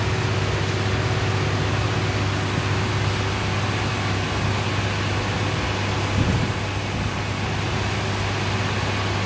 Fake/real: real